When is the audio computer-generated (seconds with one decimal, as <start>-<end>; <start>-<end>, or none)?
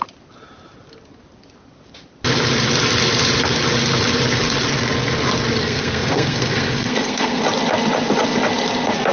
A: 5.6-7.4